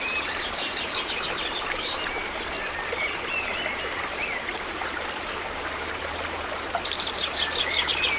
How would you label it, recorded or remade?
remade